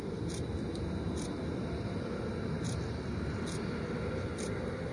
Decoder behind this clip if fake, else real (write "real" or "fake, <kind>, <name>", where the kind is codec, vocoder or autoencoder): real